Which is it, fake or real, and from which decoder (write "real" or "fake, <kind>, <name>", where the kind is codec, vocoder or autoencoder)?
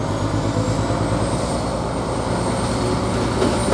real